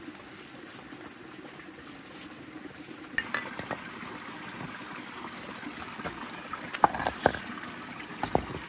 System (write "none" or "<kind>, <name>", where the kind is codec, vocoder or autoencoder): none